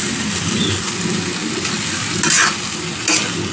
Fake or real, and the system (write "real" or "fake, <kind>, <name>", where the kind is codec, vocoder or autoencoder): real